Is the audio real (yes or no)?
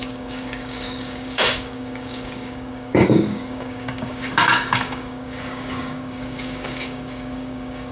no